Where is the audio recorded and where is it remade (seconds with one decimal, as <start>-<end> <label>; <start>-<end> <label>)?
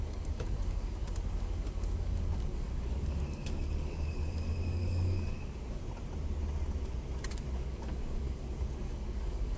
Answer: 0.0-5.8 remade; 5.8-7.3 recorded; 7.3-9.6 remade